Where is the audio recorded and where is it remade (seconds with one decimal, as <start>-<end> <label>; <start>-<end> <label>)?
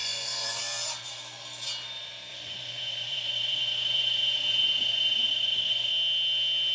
0.0-0.6 remade; 0.6-2.3 recorded; 2.3-5.9 remade; 5.9-6.7 recorded